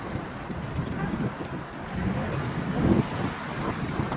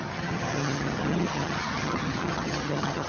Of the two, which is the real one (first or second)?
first